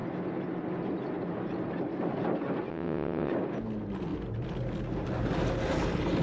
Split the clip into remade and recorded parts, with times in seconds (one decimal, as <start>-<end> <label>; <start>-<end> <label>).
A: 0.0-2.7 recorded; 2.7-3.3 remade; 3.3-6.2 recorded